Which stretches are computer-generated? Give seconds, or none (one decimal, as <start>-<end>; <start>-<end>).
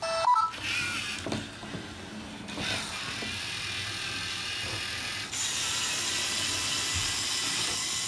none